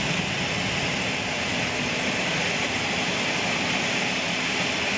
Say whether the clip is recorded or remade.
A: recorded